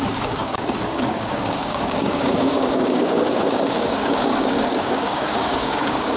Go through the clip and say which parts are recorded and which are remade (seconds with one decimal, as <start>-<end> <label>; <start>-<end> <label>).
0.0-6.2 remade